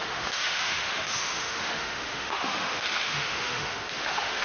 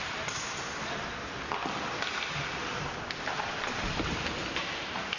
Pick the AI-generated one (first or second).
first